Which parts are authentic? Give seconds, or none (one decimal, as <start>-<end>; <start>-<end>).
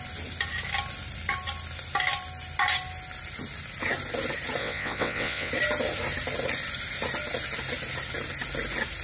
0.0-4.6; 5.5-9.0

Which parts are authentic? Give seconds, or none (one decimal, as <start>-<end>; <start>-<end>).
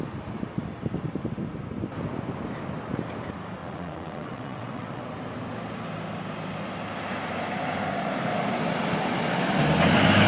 0.0-3.6; 5.0-10.3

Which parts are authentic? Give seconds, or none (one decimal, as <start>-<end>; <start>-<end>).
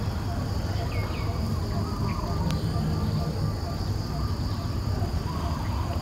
0.0-6.0